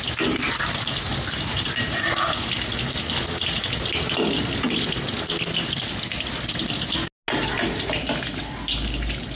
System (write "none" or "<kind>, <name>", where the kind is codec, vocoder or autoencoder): none